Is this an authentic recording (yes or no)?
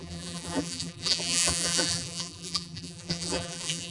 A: no